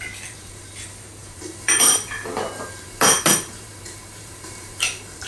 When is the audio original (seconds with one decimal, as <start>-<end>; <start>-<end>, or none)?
none